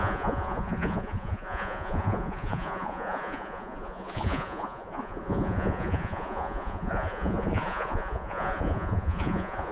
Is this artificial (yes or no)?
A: yes